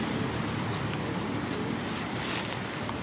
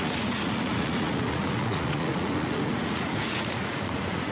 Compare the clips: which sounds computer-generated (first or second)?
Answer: second